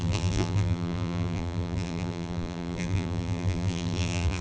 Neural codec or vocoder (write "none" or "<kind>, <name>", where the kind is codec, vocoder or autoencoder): vocoder, BigVGAN v2